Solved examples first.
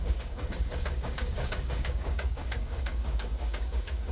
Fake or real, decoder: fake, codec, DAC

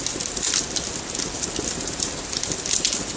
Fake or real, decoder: real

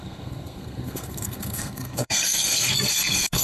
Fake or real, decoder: fake, codec, SNAC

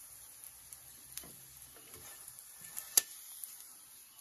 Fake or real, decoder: real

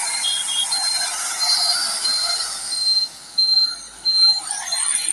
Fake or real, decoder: real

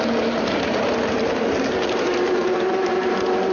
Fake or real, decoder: fake, vocoder, BigVGAN v2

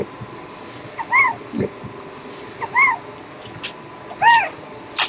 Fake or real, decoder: real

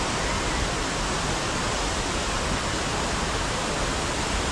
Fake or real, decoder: real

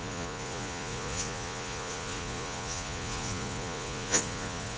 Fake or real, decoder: fake, vocoder, Vocos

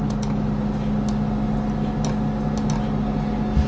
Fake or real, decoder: real